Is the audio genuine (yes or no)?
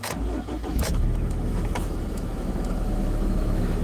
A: no